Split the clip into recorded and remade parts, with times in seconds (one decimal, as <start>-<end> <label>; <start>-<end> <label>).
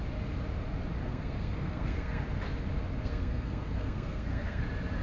0.0-1.0 recorded; 1.0-2.2 remade; 2.2-3.0 recorded; 3.0-4.6 remade; 4.6-5.0 recorded